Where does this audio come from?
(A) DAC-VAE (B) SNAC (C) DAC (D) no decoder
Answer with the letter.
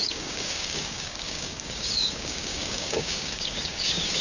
C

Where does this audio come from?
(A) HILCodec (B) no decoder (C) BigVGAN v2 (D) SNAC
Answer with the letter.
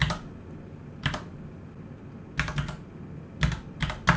B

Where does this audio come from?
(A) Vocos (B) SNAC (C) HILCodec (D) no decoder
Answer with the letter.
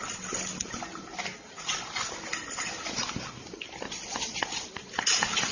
D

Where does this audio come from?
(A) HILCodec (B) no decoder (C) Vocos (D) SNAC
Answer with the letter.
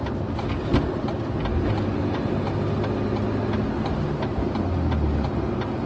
B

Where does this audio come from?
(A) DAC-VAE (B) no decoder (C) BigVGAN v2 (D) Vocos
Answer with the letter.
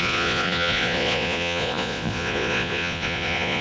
D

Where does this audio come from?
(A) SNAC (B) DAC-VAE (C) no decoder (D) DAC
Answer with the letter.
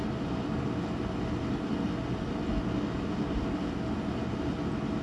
C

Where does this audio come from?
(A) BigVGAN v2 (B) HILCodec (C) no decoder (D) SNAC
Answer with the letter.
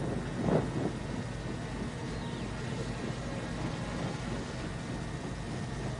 C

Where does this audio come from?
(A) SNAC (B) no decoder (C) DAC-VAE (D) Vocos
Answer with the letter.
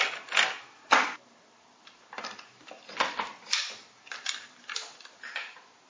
B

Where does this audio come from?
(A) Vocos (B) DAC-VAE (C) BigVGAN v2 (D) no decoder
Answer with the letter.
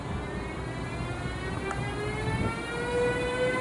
D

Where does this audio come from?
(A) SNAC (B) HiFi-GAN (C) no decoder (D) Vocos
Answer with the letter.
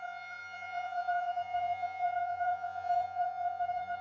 D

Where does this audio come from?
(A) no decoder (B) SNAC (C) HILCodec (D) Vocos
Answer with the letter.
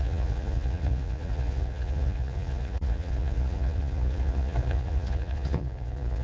D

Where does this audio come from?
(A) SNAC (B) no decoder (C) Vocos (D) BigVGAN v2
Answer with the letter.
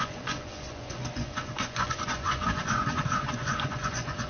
C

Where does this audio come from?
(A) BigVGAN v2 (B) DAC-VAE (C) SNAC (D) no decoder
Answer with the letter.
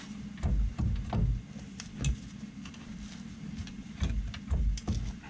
D